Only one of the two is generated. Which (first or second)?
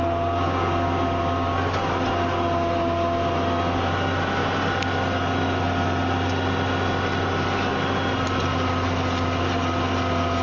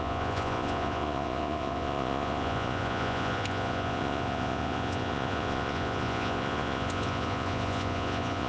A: second